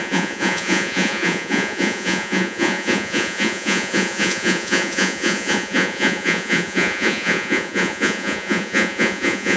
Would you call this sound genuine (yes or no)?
no